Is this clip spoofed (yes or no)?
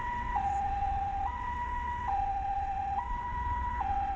yes